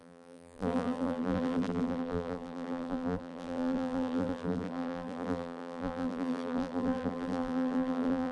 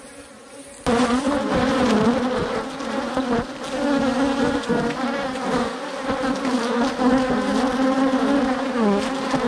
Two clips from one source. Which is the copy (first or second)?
first